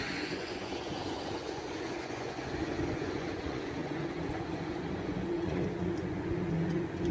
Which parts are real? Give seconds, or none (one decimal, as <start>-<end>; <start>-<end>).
none

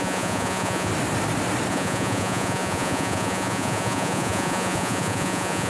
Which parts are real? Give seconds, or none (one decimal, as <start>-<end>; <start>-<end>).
0.9-1.7

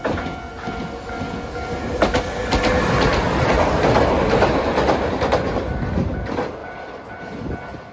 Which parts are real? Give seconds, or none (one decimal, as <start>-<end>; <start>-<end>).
0.0-7.9